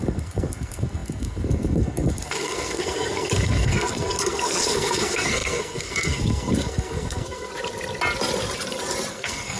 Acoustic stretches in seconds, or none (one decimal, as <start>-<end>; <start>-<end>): 7.5-9.1